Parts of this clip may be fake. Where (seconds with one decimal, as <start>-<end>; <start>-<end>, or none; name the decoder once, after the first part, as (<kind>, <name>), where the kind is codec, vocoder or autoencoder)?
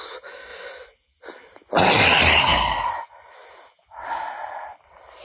none